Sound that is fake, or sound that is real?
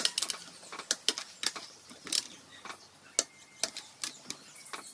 real